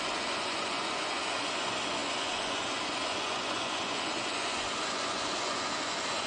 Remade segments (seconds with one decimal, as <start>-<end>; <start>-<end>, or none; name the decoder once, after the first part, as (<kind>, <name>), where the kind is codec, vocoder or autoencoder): 0.0-6.3 (vocoder, Vocos)